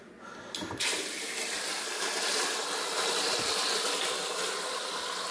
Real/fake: real